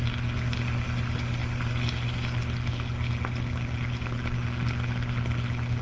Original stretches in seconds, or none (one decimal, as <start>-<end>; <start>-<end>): 0.0-5.8